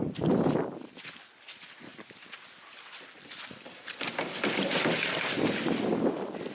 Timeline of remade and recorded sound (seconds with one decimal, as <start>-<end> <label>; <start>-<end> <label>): 0.0-6.5 recorded